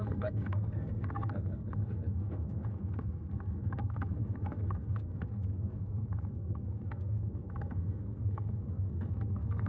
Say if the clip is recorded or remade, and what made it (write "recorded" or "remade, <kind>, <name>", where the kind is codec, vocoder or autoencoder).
remade, codec, SNAC